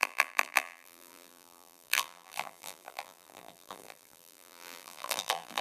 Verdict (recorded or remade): remade